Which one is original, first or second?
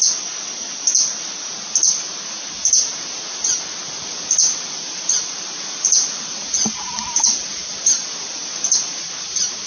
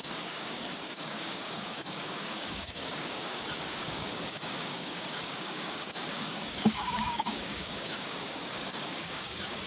first